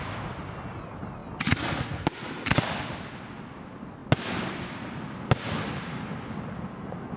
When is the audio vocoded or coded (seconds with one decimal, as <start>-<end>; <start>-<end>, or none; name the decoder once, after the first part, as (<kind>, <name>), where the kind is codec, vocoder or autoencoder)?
none